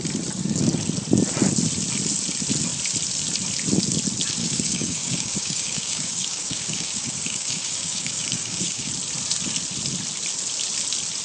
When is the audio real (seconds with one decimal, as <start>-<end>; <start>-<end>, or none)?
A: 0.0-4.4; 8.9-11.2